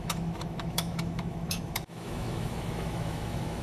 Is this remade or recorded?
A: remade